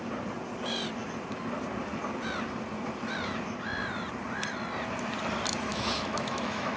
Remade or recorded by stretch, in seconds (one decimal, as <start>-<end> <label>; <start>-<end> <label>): 0.0-5.7 recorded; 5.7-6.8 remade